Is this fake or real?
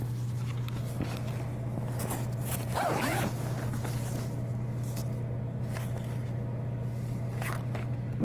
real